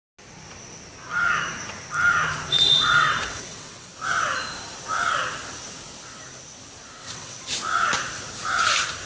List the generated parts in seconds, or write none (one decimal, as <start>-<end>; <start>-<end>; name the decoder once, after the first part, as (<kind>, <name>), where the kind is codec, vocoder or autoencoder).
2.5-3.9 (vocoder, WaveNeXt); 7.0-7.5